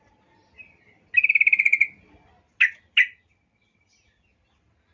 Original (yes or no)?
yes